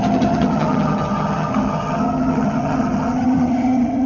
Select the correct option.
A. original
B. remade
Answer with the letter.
B